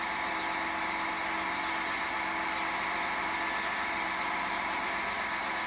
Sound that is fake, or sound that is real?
real